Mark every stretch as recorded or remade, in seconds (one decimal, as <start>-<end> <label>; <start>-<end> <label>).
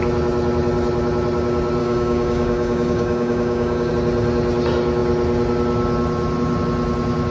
0.0-1.8 recorded; 1.8-3.9 remade; 3.9-7.3 recorded